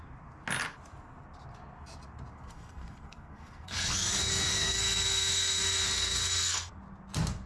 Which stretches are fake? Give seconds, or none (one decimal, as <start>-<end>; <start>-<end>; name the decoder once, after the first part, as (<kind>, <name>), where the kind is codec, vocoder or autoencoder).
2.3-6.8 (codec, SNAC)